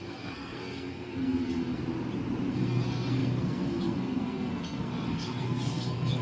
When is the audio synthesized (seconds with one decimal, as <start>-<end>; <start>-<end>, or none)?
0.0-1.8; 2.5-6.2